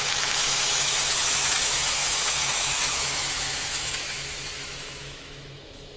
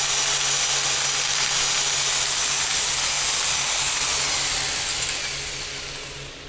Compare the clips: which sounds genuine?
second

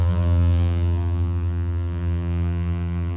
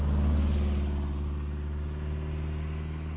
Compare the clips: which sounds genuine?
second